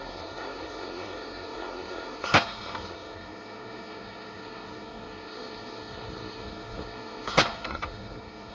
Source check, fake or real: fake